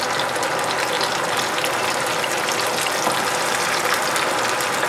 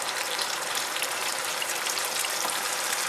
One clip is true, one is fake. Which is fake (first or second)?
second